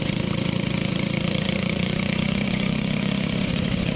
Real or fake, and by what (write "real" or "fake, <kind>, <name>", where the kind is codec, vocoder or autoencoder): fake, vocoder, Vocos